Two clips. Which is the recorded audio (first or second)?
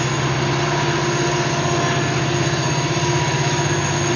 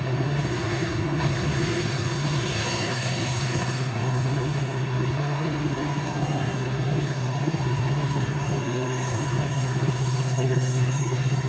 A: first